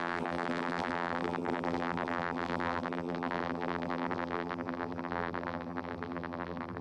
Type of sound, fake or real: fake